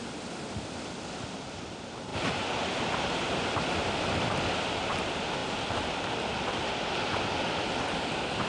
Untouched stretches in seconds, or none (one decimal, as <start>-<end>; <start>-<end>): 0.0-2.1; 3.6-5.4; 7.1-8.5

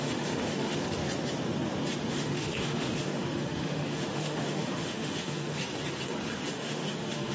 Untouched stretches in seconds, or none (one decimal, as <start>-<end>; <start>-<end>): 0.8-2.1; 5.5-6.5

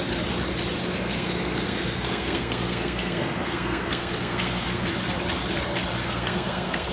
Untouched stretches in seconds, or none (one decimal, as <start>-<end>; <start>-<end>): 0.0-0.8; 4.9-6.0